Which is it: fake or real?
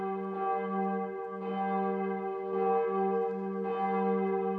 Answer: real